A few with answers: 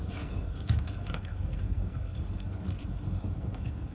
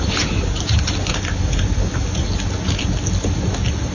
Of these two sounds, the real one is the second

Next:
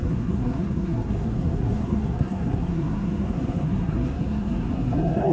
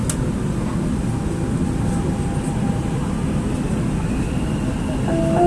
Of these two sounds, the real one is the second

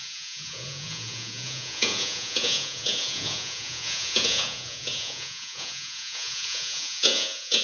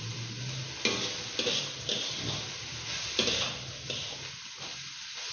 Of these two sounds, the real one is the second